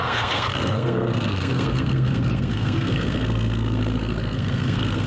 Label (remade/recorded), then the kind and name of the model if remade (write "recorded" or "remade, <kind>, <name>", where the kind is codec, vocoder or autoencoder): remade, codec, SNAC